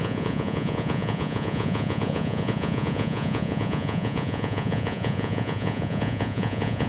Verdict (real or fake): fake